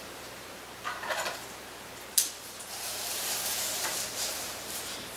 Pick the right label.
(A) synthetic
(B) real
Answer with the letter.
A